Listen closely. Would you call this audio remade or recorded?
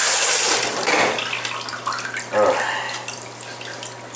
recorded